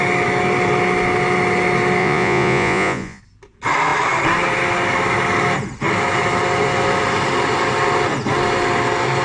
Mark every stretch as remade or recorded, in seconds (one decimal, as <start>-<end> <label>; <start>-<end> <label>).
0.0-2.0 recorded; 2.0-3.2 remade; 3.2-9.2 recorded